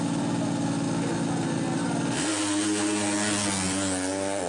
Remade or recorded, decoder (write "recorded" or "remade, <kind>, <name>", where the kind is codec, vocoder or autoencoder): recorded